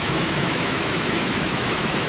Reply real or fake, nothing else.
fake